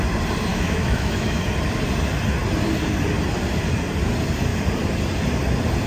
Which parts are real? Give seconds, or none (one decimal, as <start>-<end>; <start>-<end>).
0.0-0.5; 1.4-5.9